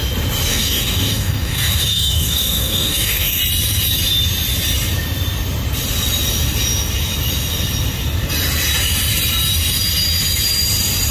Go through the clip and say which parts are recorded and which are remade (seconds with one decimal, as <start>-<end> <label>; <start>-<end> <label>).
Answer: 0.0-0.5 recorded; 0.5-3.4 remade; 3.4-11.1 recorded